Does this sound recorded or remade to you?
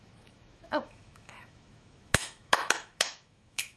remade